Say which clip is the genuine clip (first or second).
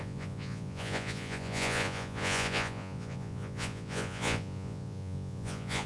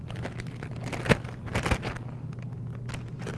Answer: second